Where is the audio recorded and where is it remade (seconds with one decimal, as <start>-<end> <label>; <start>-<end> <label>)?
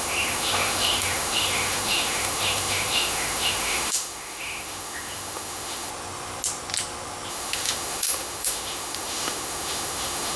0.0-5.9 remade; 5.9-7.3 recorded; 7.3-10.4 remade